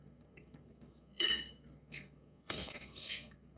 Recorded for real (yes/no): no